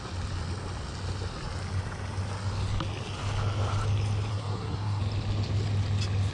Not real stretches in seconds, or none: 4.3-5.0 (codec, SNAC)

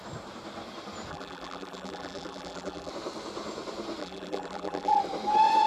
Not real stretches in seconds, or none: 1.1-2.9 (vocoder, BigVGAN v2); 4.0-5.0

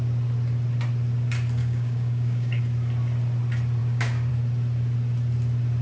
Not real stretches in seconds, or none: 1.6-2.6 (codec, DAC); 3.8-4.3

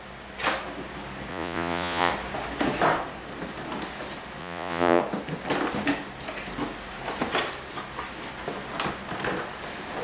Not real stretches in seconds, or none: 1.3-2.1 (vocoder, Vocos); 4.4-5.0

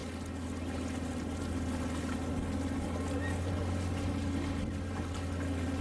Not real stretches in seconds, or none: none

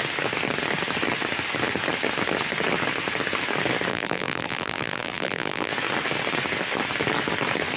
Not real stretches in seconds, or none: 3.9-5.7 (vocoder, BigVGAN v2)